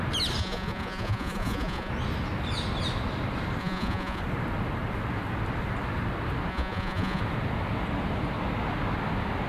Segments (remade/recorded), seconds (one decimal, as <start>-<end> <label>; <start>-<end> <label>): 0.0-0.4 recorded; 0.4-1.9 remade; 1.9-3.6 recorded; 3.6-4.2 remade; 4.2-6.5 recorded; 6.5-7.2 remade; 7.2-9.5 recorded